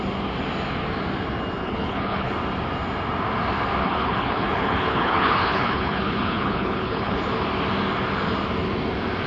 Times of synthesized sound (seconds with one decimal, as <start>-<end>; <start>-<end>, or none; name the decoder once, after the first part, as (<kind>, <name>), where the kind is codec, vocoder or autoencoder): 1.6-2.3 (codec, HILCodec); 3.8-7.3